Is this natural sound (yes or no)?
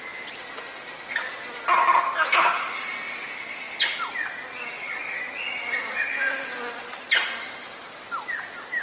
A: yes